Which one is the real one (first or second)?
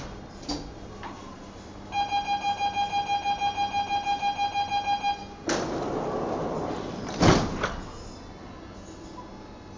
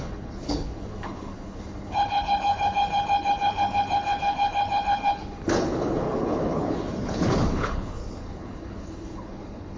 first